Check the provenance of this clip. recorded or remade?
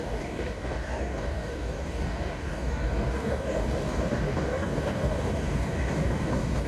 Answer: remade